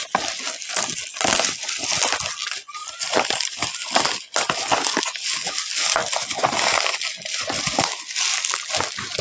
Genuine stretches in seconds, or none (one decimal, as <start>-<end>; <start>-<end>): 0.0-2.8; 5.0-9.2